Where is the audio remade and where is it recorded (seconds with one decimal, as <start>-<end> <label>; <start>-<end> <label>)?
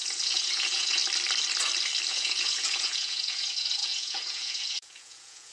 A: 0.0-1.0 remade; 1.0-2.1 recorded; 2.1-5.5 remade